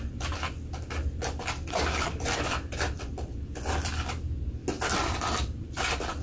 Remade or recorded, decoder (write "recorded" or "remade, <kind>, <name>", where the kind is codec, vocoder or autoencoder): recorded